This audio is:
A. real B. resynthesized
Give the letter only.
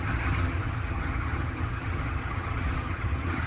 B